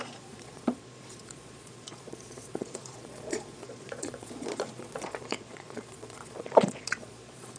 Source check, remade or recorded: remade